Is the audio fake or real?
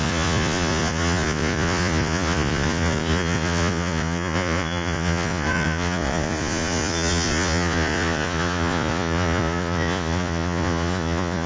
fake